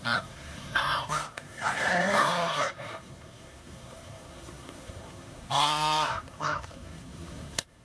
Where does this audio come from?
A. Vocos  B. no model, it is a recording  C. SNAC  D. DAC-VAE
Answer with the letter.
C